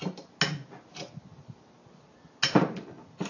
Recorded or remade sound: recorded